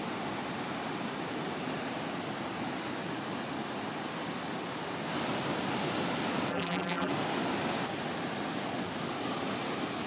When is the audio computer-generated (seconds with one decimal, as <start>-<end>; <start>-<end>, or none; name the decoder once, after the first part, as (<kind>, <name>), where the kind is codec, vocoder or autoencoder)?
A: 6.5-7.1 (vocoder, BigVGAN v2)